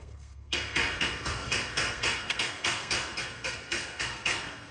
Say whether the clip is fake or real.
fake